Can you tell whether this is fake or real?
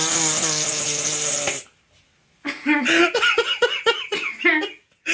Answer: real